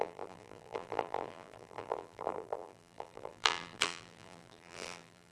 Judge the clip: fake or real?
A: fake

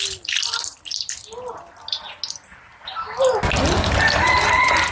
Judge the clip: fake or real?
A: real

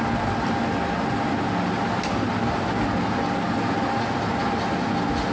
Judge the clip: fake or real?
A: real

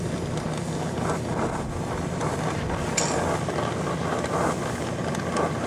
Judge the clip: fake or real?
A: real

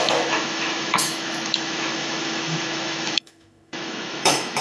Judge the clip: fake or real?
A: fake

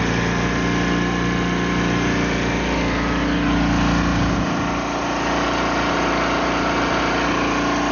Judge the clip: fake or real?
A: real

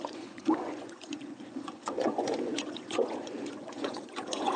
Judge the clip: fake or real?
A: fake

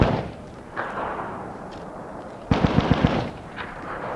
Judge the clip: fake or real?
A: fake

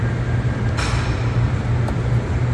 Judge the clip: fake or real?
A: real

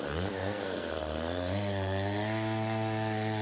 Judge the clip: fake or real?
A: fake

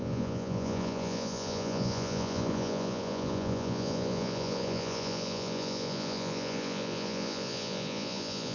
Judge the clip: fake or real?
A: fake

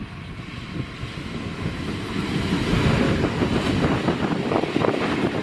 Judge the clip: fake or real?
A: real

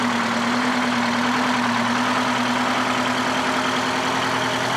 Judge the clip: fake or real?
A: real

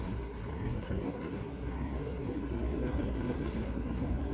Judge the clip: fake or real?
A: fake